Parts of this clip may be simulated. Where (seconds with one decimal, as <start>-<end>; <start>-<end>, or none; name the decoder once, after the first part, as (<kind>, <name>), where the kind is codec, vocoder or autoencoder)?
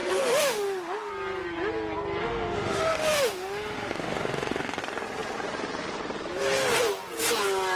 0.0-1.1 (autoencoder, DAC-VAE); 2.2-4.8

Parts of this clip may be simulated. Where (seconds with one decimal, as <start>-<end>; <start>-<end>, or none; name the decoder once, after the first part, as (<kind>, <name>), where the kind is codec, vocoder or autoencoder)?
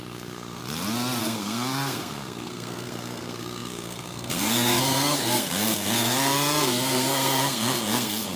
0.0-0.6 (codec, SNAC); 1.2-8.4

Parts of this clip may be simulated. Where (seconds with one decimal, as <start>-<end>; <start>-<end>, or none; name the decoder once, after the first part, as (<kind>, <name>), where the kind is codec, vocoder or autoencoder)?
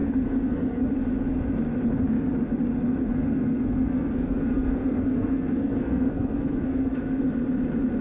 0.0-0.9 (codec, SNAC); 3.0-7.2